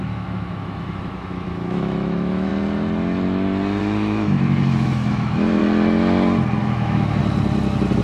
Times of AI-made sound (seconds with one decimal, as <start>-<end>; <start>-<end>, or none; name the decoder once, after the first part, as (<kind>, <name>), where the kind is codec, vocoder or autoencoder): 0.0-2.5 (autoencoder, DAC-VAE); 3.8-5.6; 6.6-7.2